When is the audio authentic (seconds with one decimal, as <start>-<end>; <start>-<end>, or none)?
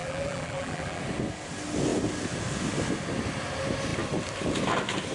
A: 1.0-5.1